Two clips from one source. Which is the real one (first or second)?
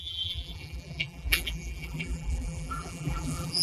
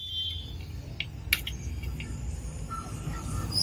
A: second